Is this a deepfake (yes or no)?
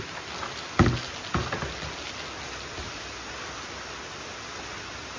no